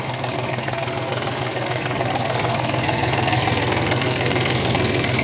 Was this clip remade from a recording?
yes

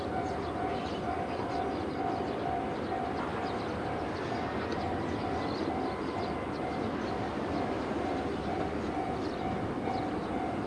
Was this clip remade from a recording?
no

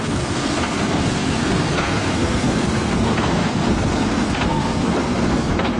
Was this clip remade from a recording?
yes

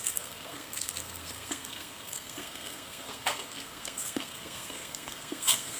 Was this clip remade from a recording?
yes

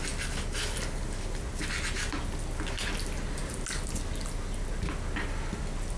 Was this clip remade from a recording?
no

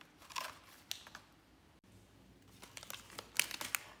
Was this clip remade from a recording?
no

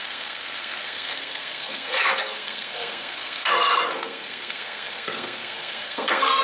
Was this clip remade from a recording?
yes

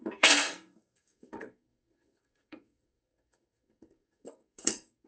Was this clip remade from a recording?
yes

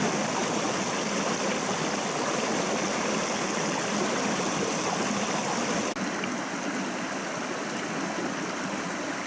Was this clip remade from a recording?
no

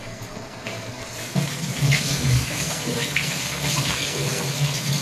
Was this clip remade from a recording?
yes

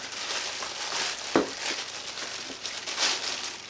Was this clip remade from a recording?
no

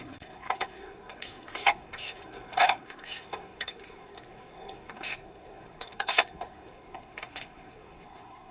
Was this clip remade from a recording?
yes